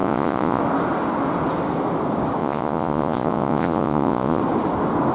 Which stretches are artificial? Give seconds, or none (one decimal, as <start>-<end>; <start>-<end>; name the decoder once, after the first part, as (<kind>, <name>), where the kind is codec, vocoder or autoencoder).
0.0-0.6 (vocoder, Vocos); 2.4-4.4